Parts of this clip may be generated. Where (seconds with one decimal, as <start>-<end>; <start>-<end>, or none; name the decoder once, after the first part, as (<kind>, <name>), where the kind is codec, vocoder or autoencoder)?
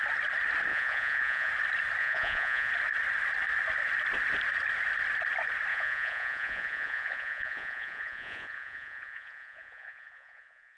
0.7-1.5 (vocoder, Vocos); 2.0-2.7; 5.7-10.8